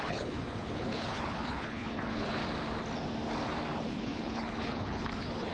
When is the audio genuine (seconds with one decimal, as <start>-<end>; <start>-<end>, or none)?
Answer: 2.4-3.9